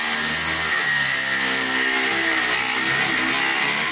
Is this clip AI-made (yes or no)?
no